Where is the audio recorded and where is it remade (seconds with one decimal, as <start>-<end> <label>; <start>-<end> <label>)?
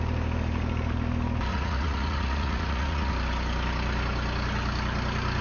0.0-1.5 recorded; 1.5-3.1 remade; 3.1-5.4 recorded